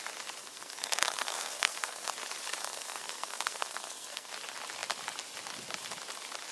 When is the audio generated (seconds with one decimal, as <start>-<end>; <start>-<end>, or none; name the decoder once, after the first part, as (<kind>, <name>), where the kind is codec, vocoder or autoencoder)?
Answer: 0.4-2.1 (codec, SNAC); 2.6-4.3